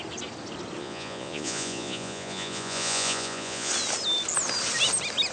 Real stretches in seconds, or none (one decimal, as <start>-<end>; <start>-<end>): 0.0-0.8; 3.7-5.3